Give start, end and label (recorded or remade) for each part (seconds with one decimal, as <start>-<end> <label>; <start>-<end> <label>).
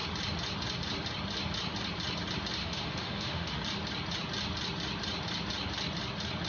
0.0-2.6 recorded; 2.6-3.6 remade; 3.6-6.5 recorded